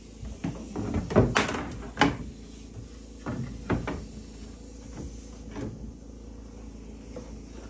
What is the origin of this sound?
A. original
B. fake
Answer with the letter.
A